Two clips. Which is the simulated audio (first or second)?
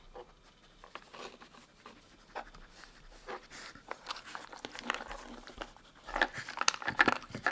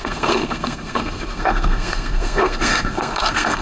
second